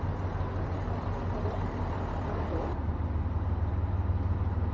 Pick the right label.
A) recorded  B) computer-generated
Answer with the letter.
A